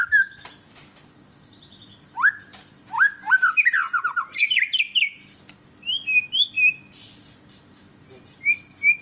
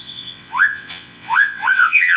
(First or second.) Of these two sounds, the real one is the first